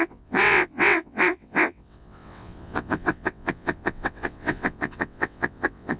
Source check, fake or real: fake